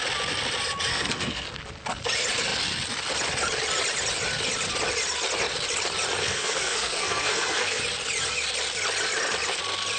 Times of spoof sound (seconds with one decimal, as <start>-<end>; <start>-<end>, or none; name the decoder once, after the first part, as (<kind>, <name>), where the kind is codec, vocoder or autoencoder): 0.9-1.5 (codec, SNAC); 6.2-7.8